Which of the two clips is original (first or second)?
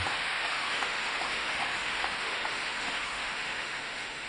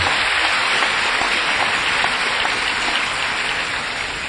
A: second